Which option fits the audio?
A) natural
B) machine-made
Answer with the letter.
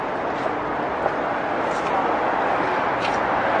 A